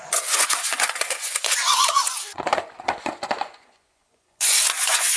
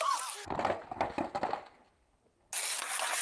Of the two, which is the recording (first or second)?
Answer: second